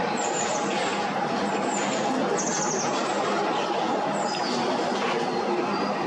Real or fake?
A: real